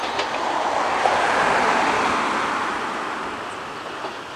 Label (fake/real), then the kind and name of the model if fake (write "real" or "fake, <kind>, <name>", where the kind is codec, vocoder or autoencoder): real